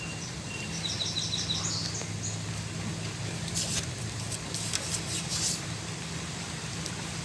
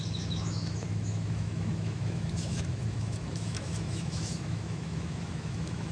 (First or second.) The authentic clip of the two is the first